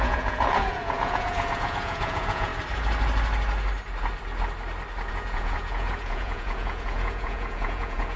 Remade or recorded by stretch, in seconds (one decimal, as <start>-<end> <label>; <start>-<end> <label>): 0.0-2.5 remade; 2.5-5.1 recorded; 5.1-8.2 remade